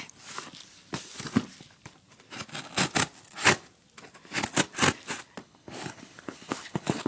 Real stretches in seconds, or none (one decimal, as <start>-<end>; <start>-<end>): 0.0-5.4